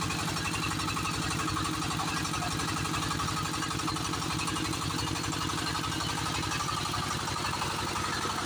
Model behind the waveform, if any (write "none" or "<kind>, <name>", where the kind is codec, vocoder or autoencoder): none